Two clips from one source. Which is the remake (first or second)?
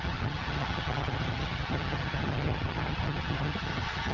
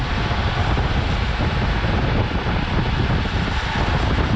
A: first